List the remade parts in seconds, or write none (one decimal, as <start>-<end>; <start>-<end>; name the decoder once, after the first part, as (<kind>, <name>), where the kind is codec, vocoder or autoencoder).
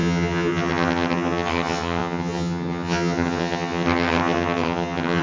0.0-5.2 (vocoder, HiFi-GAN)